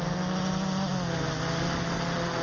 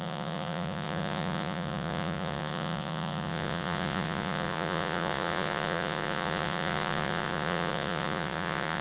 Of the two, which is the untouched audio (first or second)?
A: first